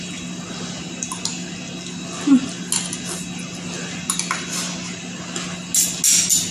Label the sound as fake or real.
real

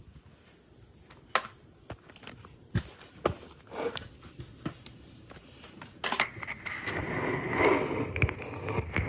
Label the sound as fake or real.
real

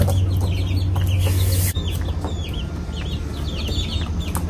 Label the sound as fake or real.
real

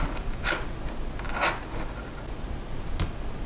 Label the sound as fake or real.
real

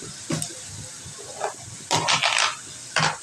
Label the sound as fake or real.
real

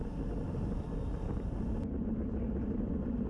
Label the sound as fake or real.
real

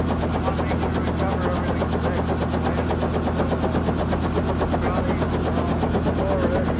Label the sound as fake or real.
real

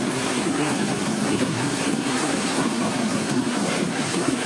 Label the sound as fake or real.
fake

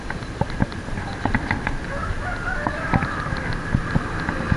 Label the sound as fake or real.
real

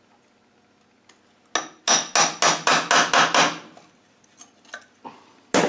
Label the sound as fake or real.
real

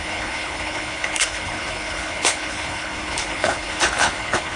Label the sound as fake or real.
fake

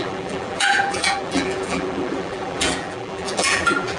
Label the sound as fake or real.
fake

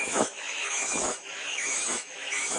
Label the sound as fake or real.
fake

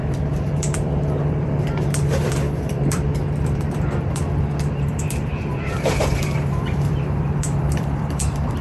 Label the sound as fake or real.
fake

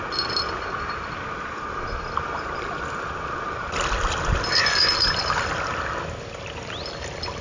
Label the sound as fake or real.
real